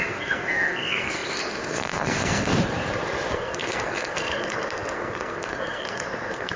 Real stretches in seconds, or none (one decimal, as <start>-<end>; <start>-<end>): 2.5-3.3